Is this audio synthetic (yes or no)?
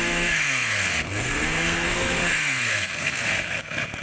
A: yes